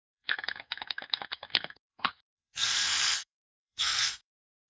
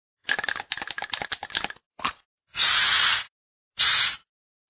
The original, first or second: second